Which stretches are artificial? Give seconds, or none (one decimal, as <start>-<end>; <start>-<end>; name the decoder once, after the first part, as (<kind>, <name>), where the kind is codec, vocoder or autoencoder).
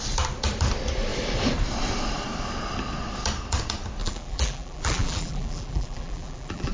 4.0-6.7 (vocoder, BigVGAN v2)